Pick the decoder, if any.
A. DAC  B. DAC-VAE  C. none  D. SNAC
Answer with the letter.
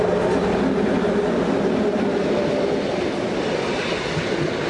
C